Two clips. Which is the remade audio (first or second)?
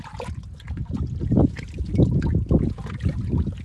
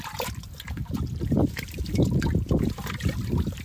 second